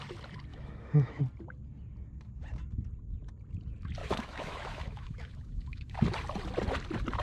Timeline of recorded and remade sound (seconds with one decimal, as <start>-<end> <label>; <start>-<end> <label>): 0.0-0.5 recorded; 0.5-1.2 remade; 1.2-4.0 recorded; 4.0-6.0 remade; 6.0-7.2 recorded